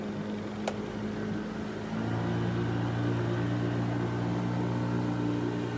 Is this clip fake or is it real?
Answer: real